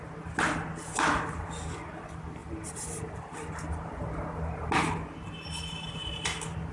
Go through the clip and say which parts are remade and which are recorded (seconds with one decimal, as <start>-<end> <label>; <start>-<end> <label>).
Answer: 0.0-6.7 recorded